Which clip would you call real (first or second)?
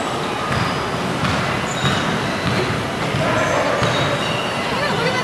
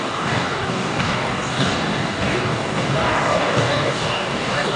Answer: first